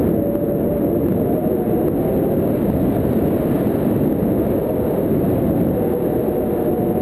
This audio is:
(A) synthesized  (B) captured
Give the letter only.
B